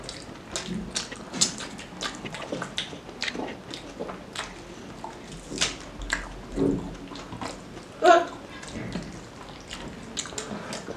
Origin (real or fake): real